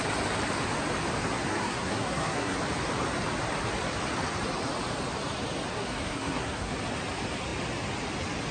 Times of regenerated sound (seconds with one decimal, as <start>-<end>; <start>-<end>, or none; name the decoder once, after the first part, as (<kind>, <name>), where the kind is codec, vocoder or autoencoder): 1.5-2.6 (codec, SNAC); 5.7-6.7